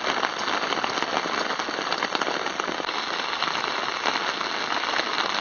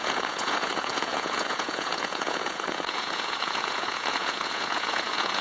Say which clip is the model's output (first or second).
second